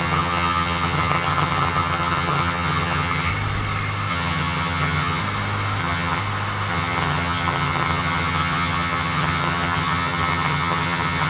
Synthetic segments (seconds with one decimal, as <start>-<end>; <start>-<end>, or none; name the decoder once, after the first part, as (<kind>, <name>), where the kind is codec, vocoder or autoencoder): 0.0-3.3 (vocoder, HiFi-GAN); 4.1-5.2; 5.8-6.2; 6.7-11.3